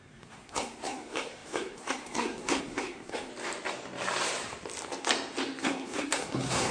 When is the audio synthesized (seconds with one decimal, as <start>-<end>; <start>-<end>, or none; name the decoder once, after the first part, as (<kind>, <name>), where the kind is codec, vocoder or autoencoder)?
0.0-3.3 (codec, SNAC); 5.6-6.7